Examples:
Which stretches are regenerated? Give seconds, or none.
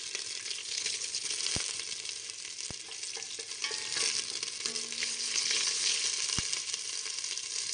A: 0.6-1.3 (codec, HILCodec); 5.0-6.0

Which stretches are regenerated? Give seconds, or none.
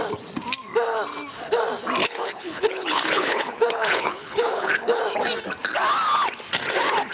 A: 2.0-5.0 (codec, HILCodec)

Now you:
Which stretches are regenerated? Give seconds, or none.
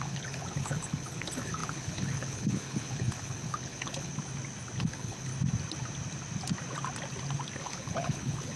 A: 0.0-4.1 (codec, HILCodec); 4.8-5.3; 7.6-8.6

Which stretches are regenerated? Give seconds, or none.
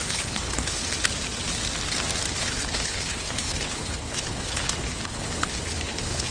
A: 0.0-0.9 (codec, HILCodec); 2.4-6.3